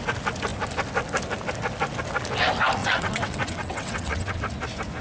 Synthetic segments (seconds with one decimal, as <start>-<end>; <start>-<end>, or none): 2.8-4.4